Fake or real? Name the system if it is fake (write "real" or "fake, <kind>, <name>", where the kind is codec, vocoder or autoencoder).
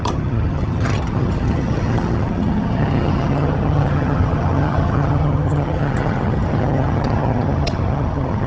fake, vocoder, HiFi-GAN